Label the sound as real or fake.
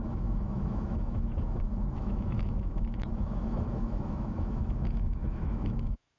fake